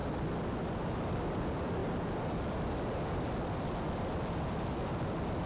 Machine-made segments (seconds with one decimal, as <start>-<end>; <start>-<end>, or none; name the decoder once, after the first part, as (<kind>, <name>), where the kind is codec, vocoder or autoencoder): none